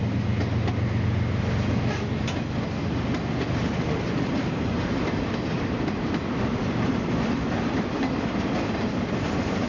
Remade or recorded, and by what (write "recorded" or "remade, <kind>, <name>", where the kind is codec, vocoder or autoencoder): recorded